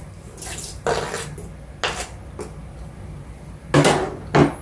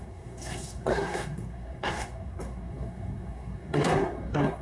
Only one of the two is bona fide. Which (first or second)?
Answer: first